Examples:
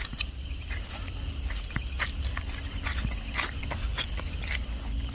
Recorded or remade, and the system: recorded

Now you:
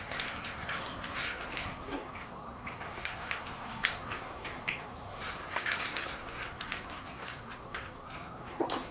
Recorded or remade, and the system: remade, codec, SNAC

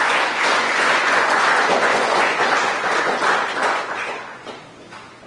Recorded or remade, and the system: remade, vocoder, Vocos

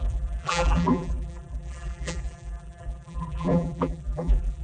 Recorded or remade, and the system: remade, vocoder, BigVGAN v2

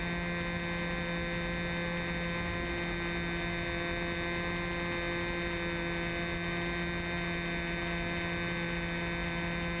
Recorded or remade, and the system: recorded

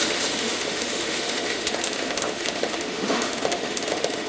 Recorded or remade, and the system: remade, autoencoder, DAC-VAE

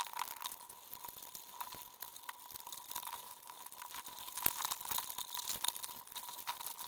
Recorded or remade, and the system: recorded